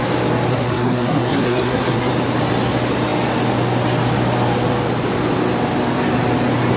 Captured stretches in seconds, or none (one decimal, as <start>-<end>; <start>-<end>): 0.0-0.5; 2.1-6.8